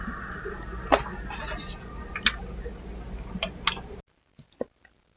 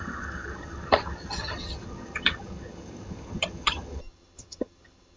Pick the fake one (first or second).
second